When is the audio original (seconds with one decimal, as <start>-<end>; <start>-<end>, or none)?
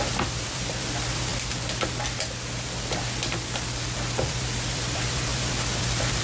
1.3-4.2